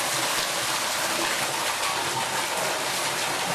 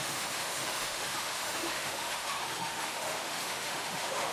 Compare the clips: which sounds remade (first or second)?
second